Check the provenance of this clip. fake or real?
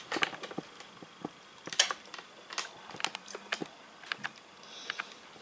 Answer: real